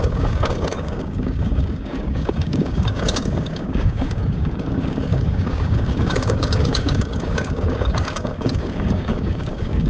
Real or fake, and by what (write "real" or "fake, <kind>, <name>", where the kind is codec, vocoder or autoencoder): fake, codec, DAC